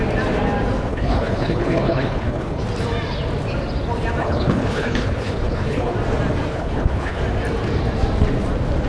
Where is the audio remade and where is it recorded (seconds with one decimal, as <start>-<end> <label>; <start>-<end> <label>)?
0.0-0.9 recorded; 0.9-2.6 remade; 2.6-4.2 recorded; 4.2-5.9 remade; 5.9-6.5 recorded; 6.5-7.2 remade; 7.2-8.9 recorded